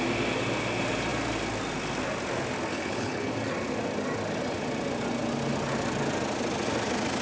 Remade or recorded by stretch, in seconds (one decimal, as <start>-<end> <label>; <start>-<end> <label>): 0.0-2.7 recorded; 2.7-3.3 remade; 3.3-7.2 recorded